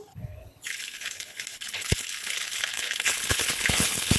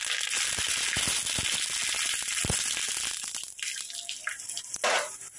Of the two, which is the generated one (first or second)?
first